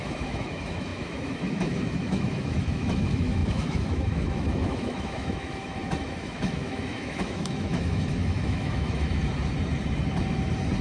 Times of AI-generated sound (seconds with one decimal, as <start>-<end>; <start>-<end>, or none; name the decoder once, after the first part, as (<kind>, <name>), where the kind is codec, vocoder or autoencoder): 0.0-9.2 (autoencoder, DAC-VAE)